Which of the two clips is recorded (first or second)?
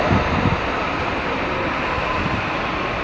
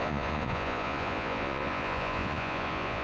first